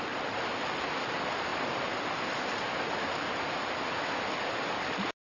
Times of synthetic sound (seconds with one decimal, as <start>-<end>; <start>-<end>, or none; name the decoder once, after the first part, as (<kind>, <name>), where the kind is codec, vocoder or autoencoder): none